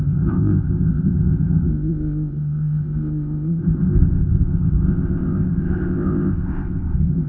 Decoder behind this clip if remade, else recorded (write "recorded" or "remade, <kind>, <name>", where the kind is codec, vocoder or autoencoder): remade, codec, ZipCodec